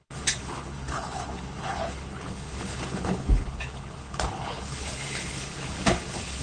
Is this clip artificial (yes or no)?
yes